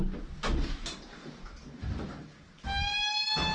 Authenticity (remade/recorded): recorded